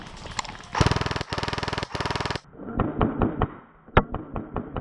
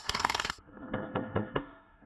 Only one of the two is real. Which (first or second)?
first